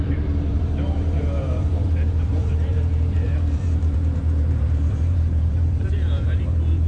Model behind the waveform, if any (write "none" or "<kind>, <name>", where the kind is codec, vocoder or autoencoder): vocoder, BigVGAN v2